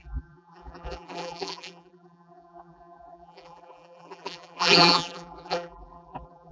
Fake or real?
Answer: fake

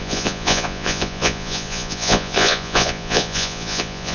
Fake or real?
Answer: fake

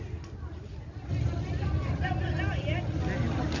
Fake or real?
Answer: real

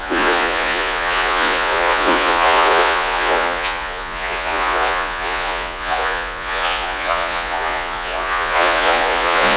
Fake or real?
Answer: fake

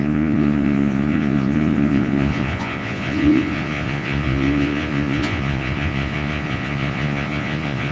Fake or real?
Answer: fake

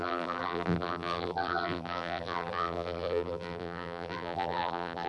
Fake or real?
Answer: fake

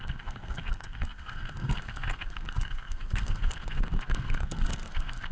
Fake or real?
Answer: fake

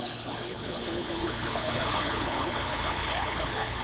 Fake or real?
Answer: fake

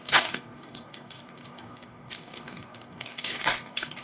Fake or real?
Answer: fake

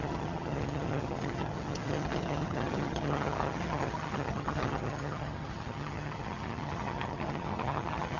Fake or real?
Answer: fake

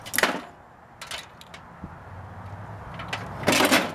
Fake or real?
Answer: real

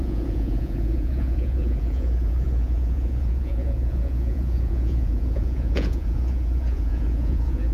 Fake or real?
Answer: fake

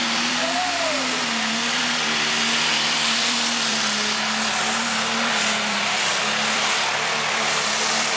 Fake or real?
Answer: fake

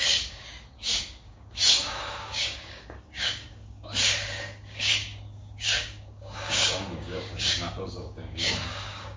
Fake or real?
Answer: fake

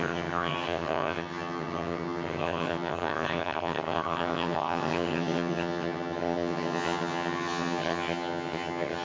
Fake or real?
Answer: fake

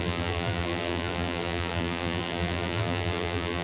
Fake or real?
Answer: fake